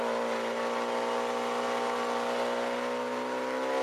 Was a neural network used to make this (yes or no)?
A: no